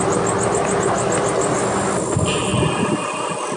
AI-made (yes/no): no